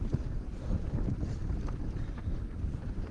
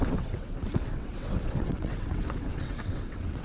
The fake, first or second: second